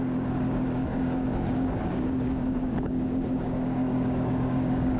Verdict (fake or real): fake